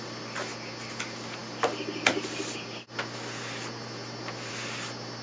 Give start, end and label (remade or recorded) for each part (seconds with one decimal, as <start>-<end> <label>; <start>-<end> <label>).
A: 0.0-5.2 recorded